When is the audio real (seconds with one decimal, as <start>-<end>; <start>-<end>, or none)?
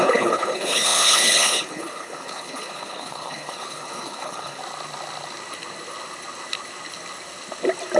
4.6-8.0